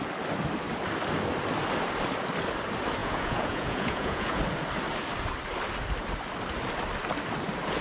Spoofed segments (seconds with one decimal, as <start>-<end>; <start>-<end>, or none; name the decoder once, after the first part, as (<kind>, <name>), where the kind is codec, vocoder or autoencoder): 3.0-4.4 (vocoder, Vocos)